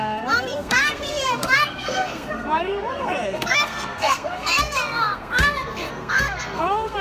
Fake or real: fake